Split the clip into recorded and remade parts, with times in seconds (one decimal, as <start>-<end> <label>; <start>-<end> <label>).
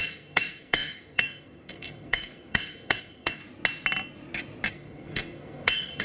0.0-3.4 remade; 3.4-4.7 recorded; 4.7-6.0 remade